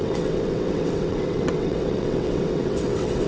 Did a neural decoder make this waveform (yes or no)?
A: yes